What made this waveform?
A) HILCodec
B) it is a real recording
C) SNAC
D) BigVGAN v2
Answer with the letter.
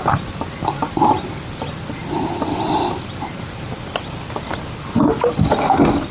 B